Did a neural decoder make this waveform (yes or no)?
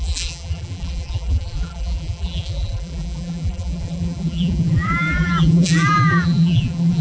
yes